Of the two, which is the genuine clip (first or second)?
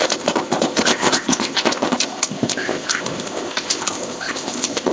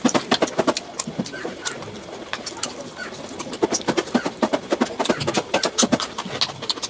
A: second